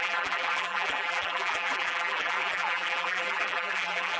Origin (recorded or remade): remade